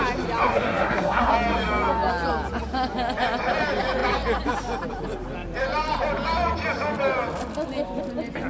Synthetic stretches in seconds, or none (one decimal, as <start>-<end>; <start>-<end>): 0.4-1.3